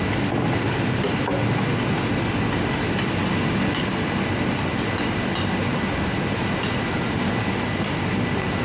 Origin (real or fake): real